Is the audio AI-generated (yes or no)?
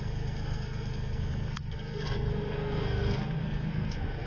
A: yes